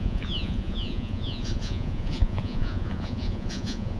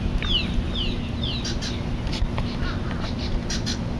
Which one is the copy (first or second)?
first